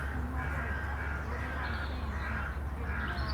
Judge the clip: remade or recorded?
recorded